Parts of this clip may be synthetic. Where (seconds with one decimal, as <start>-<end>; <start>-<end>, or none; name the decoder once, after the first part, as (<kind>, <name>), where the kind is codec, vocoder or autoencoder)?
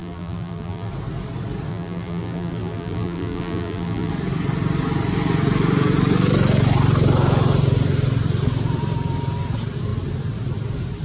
0.0-0.9 (vocoder, BigVGAN v2); 1.7-4.1